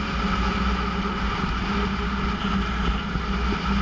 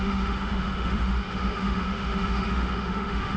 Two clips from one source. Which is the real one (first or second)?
first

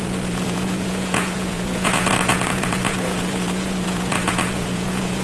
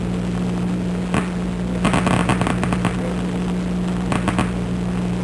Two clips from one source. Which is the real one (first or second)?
second